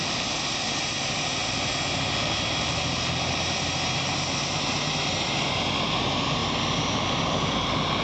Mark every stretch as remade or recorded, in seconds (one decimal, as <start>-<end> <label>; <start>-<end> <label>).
0.0-8.0 recorded